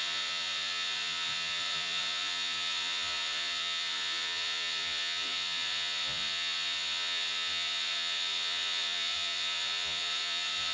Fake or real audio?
fake